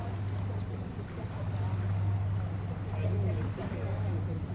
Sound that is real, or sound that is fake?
real